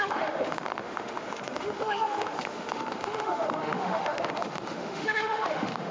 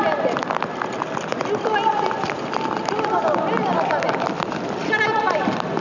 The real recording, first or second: second